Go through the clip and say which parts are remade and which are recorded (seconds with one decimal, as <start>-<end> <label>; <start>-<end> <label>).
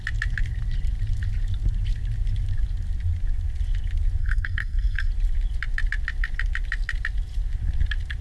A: 0.0-4.2 recorded; 4.2-5.1 remade; 5.1-8.2 recorded